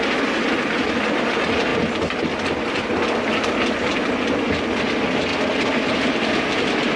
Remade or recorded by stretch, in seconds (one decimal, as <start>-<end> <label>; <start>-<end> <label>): 0.0-7.0 recorded